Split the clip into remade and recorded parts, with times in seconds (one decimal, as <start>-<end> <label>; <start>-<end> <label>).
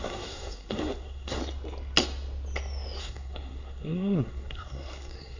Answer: 0.0-1.4 remade; 1.4-3.0 recorded; 3.0-5.4 remade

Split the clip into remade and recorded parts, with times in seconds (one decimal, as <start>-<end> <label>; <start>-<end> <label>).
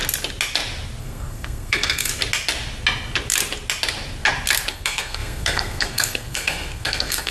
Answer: 0.0-1.0 recorded; 1.0-2.1 remade; 2.1-4.7 recorded; 4.7-7.3 remade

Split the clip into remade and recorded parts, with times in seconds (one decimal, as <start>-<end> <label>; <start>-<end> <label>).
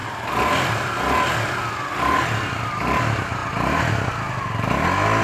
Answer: 0.0-5.2 recorded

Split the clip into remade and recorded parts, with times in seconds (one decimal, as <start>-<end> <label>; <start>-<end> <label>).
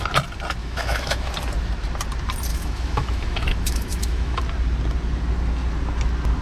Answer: 0.0-0.6 recorded; 0.6-1.3 remade; 1.3-2.5 recorded; 2.5-4.4 remade; 4.4-6.4 recorded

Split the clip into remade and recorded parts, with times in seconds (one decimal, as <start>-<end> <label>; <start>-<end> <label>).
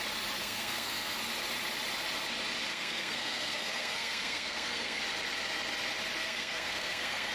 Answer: 0.0-0.4 recorded; 0.4-1.2 remade; 1.2-2.7 recorded; 2.7-5.0 remade; 5.0-6.2 recorded; 6.2-7.3 remade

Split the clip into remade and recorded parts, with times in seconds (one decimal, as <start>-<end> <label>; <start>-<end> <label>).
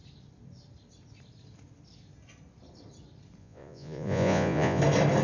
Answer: 0.0-3.4 recorded; 3.4-4.8 remade; 4.8-5.2 recorded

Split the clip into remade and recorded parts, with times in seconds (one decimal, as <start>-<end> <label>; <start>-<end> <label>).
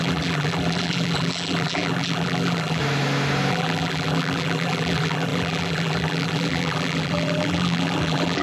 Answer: 0.0-2.8 remade; 2.8-3.5 recorded; 3.5-8.4 remade